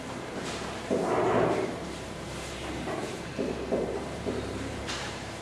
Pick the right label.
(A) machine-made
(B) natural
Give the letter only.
A